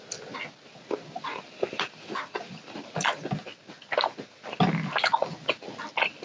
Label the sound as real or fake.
real